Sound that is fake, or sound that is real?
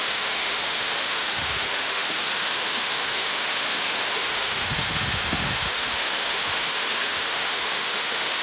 fake